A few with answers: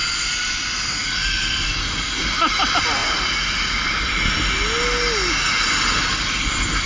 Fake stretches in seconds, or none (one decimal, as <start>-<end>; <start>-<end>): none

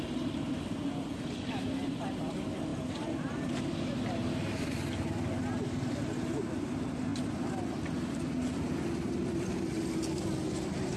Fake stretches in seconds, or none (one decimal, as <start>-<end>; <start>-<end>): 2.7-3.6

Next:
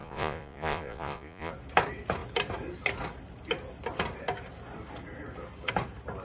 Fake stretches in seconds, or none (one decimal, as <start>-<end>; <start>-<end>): 0.0-1.5

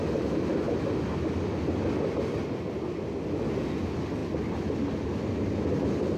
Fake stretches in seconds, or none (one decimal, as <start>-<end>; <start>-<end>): none

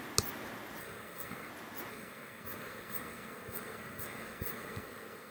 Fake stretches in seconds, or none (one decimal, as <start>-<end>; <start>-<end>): 0.8-1.5; 1.9-5.3

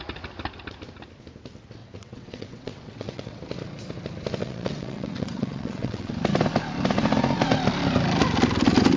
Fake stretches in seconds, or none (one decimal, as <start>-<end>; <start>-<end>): 1.8-3.4; 4.4-6.1